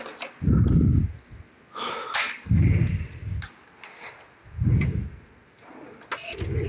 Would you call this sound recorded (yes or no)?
yes